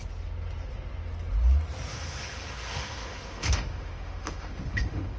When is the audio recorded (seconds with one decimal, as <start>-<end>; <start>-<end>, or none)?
0.0-1.9